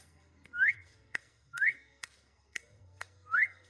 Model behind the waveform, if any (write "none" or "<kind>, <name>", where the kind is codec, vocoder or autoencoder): codec, SNAC